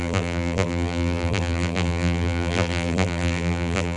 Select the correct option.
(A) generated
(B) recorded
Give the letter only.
A